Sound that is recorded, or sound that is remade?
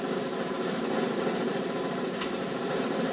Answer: remade